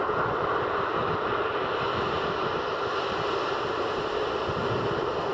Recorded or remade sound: recorded